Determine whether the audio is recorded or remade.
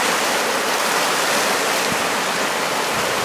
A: recorded